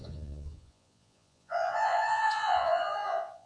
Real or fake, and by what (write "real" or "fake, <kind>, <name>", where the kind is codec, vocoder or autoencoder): fake, vocoder, Vocos